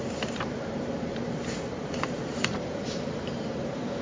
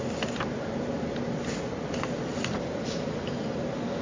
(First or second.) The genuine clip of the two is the second